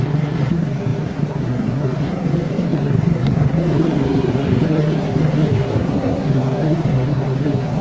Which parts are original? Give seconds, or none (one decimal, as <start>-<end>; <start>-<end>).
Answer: none